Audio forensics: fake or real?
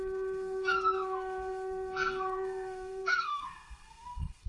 fake